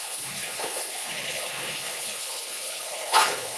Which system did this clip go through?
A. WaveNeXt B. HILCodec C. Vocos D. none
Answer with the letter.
B